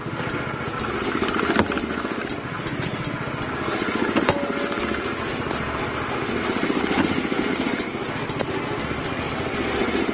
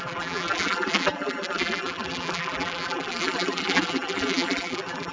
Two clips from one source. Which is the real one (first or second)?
first